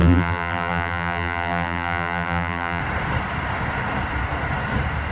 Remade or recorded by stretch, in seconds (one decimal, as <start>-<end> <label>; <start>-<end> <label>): 0.0-2.8 remade; 2.8-5.1 recorded